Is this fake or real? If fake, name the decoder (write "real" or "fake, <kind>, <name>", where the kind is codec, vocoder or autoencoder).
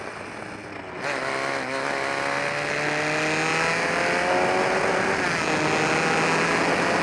real